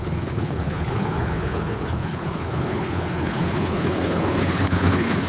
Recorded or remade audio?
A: remade